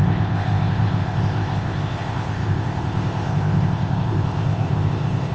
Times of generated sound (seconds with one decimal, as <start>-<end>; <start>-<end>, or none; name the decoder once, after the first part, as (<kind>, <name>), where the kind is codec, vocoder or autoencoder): 0.0-5.3 (codec, ZipCodec)